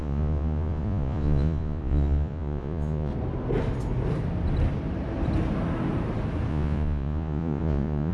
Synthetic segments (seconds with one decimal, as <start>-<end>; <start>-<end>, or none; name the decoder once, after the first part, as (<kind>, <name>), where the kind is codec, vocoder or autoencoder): 0.0-3.1 (vocoder, Vocos); 6.5-8.1